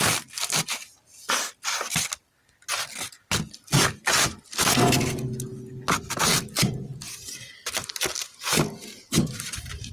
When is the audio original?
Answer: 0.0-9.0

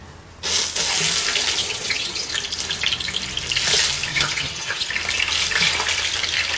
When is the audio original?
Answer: 0.0-1.6; 2.3-4.1; 4.9-6.6